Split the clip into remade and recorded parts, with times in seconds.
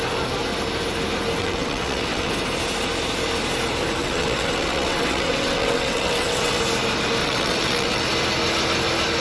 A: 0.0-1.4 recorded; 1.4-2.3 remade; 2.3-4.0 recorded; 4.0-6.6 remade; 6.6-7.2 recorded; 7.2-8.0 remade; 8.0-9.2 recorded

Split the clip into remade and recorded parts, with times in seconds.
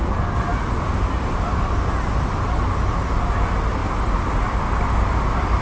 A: 0.0-5.6 recorded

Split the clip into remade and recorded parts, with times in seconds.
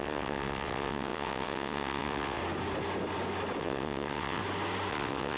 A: 0.0-2.4 remade; 2.4-3.6 recorded; 3.6-4.4 remade; 4.4-4.9 recorded; 4.9-5.4 remade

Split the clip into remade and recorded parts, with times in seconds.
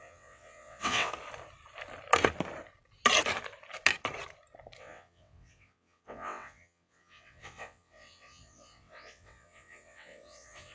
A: 0.0-1.1 remade; 1.1-4.8 recorded; 4.8-10.7 remade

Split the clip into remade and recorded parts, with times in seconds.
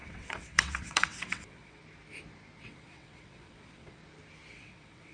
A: 0.0-1.8 remade; 1.8-2.6 recorded; 2.6-4.0 remade; 4.0-4.5 recorded; 4.5-5.1 remade